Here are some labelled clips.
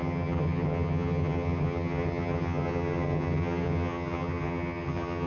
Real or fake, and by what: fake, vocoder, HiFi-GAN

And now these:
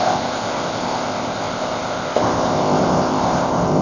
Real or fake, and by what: fake, codec, ZipCodec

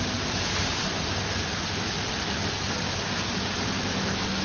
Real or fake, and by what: real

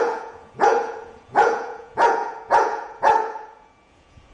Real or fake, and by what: fake, vocoder, Vocos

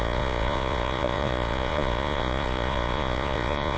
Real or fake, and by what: fake, vocoder, Vocos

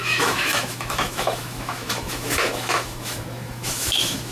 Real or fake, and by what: fake, autoencoder, DAC-VAE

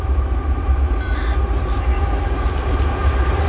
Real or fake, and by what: fake, vocoder, BigVGAN v2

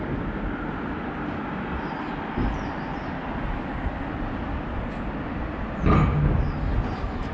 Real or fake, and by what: real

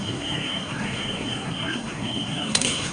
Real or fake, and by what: fake, codec, SNAC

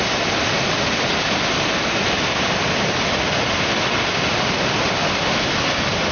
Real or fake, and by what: real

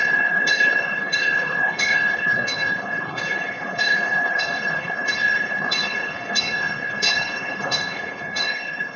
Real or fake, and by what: fake, codec, HILCodec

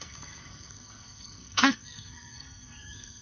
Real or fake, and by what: fake, codec, SNAC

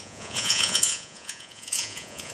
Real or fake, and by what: fake, vocoder, Vocos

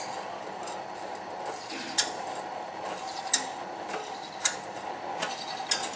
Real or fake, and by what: real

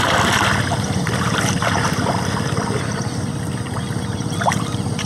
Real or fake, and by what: fake, vocoder, BigVGAN v2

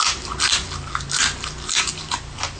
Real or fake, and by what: real